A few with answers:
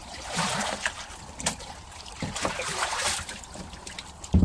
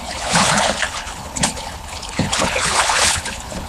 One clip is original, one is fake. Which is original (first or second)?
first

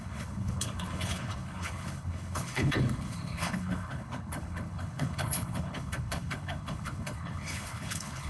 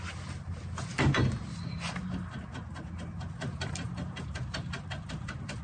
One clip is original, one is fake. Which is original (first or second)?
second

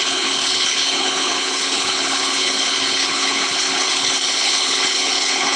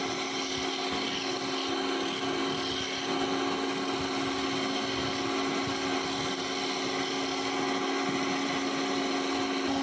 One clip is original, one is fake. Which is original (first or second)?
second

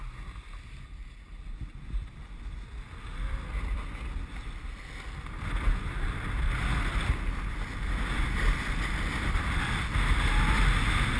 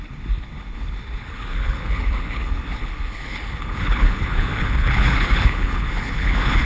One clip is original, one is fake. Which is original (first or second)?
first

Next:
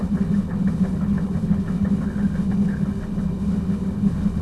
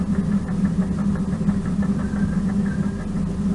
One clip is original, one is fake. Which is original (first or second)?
second